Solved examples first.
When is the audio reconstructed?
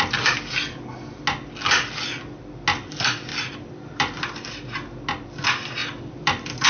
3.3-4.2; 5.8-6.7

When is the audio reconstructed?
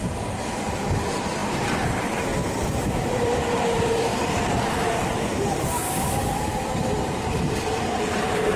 0.0-2.3; 2.8-5.3; 7.0-8.6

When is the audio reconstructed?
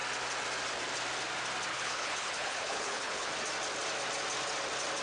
1.7-3.3